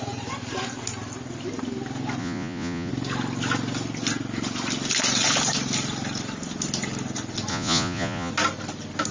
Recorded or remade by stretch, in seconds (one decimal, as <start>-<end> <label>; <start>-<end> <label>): 0.0-2.2 recorded; 2.2-2.9 remade; 2.9-7.5 recorded; 7.5-8.3 remade; 8.3-9.1 recorded